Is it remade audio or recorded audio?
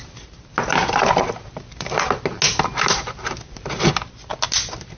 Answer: recorded